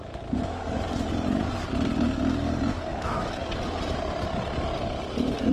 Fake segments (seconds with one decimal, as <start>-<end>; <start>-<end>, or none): 0.0-0.6; 2.9-3.4